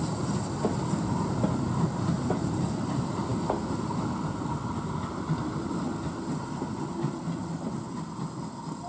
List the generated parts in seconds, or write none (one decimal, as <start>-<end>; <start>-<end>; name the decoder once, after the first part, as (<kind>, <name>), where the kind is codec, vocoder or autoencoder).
none